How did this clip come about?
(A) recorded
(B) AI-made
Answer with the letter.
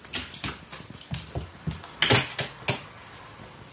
A